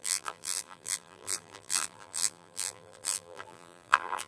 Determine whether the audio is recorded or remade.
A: remade